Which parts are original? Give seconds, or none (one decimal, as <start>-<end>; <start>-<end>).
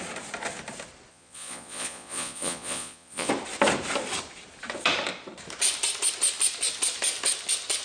0.0-1.1; 3.3-7.8